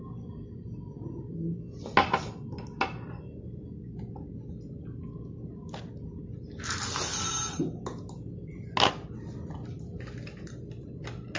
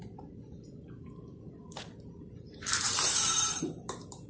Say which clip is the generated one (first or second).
second